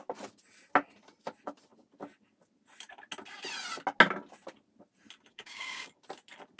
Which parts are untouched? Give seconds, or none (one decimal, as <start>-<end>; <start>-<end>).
0.0-5.3; 6.0-6.6